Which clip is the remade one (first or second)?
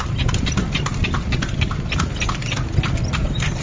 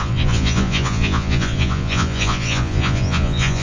second